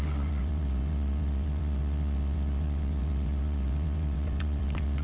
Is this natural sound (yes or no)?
no